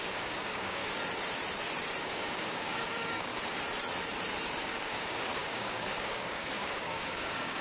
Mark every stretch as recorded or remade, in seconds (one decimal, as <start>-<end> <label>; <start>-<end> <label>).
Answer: 0.0-0.8 remade; 0.8-2.0 recorded; 2.0-3.3 remade; 3.3-4.6 recorded; 4.6-7.6 remade